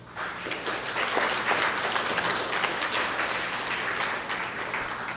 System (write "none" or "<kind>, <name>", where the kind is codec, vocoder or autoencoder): none